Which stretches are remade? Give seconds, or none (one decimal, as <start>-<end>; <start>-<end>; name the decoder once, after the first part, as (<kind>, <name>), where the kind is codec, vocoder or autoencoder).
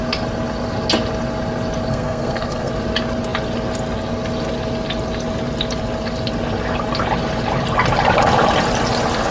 1.9-2.7 (codec, SNAC)